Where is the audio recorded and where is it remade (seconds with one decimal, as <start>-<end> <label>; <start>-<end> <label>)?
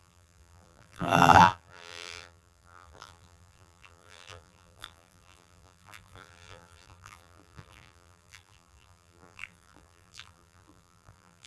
0.0-11.5 remade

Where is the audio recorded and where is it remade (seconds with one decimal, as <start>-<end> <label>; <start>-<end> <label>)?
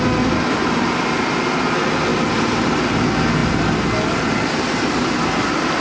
0.0-3.4 recorded; 3.4-4.6 remade; 4.6-5.8 recorded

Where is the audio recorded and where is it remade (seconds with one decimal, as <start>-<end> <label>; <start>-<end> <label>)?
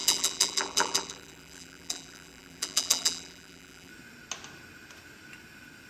0.0-3.9 remade; 3.9-5.9 recorded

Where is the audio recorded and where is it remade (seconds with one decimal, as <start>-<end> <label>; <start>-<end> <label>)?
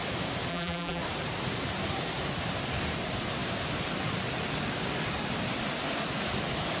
0.0-0.5 recorded; 0.5-1.0 remade; 1.0-6.8 recorded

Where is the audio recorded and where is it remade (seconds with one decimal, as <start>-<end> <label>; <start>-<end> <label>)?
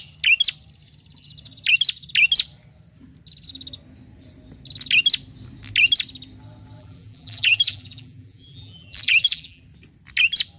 0.0-6.8 recorded; 6.8-9.6 remade; 9.6-10.6 recorded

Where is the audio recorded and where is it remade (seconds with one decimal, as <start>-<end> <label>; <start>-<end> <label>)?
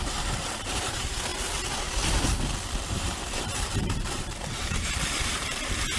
0.0-0.6 recorded; 0.6-1.3 remade; 1.3-2.9 recorded; 2.9-6.0 remade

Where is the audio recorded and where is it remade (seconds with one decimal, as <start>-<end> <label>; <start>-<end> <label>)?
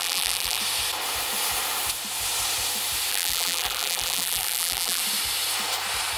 0.0-0.6 remade; 0.6-3.1 recorded; 3.1-5.0 remade; 5.0-6.2 recorded